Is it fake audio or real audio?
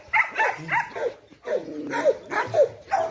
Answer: real